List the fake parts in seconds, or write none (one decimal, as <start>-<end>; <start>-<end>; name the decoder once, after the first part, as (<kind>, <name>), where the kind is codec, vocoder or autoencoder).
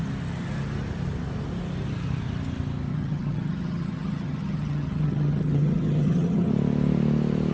2.9-6.5 (vocoder, HiFi-GAN)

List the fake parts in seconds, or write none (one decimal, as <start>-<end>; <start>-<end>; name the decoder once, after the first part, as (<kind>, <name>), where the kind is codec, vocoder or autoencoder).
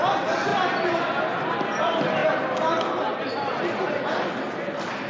none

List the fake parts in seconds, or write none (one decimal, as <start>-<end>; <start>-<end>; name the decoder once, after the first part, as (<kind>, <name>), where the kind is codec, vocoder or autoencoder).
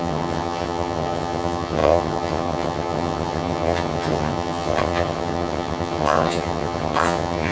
0.0-7.5 (vocoder, HiFi-GAN)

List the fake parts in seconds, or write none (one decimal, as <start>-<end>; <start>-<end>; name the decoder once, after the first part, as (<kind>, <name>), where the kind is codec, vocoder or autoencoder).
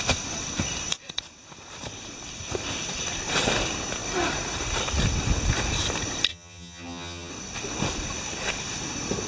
6.3-7.3 (vocoder, HiFi-GAN)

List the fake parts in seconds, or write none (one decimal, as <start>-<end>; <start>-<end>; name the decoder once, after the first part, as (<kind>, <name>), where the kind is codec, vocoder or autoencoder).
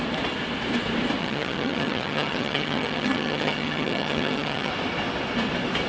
1.2-4.7 (vocoder, HiFi-GAN)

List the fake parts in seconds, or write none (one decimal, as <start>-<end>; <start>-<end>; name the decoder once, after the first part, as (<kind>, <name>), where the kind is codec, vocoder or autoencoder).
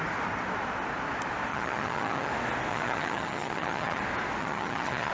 1.5-2.3 (vocoder, HiFi-GAN); 2.7-4.0; 4.4-5.1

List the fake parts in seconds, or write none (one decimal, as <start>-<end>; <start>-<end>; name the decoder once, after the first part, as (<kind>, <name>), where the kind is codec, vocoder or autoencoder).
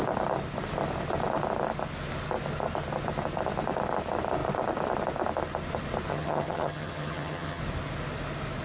6.1-7.6 (vocoder, HiFi-GAN)